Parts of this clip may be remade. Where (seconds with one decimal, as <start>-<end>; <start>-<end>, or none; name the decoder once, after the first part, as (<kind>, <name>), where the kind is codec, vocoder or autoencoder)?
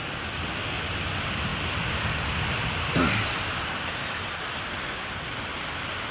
none